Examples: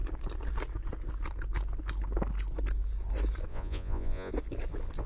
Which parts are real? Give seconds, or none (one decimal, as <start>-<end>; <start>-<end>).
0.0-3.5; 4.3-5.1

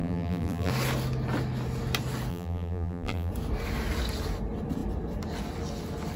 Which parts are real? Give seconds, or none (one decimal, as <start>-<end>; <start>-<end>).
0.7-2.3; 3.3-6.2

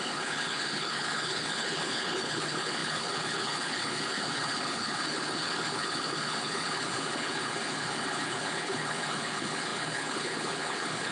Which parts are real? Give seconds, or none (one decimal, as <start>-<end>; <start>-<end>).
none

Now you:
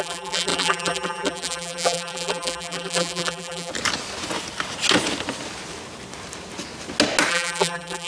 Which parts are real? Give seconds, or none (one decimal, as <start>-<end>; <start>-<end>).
3.7-7.3

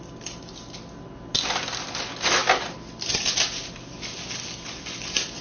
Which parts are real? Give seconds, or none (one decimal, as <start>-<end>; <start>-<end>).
0.0-5.4